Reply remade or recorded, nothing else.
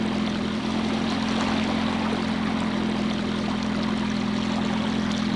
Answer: recorded